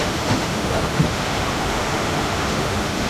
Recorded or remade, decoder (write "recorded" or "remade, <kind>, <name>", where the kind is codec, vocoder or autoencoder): remade, autoencoder, DAC-VAE